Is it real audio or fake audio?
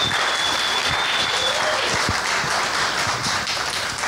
real